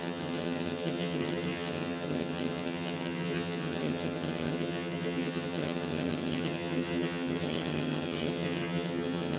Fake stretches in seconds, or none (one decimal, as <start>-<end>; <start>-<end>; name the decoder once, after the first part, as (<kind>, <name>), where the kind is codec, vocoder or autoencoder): 0.0-9.4 (vocoder, HiFi-GAN)